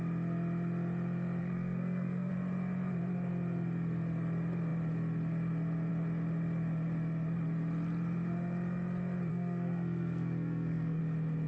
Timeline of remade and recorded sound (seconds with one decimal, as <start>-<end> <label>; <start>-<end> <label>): 0.0-1.4 recorded; 1.4-2.3 remade; 2.3-9.3 recorded; 9.3-11.0 remade; 11.0-11.5 recorded